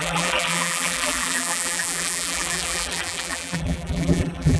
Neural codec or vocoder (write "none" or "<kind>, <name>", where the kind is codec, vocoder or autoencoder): vocoder, BigVGAN v2